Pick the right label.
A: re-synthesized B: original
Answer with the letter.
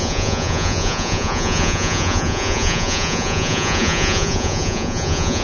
A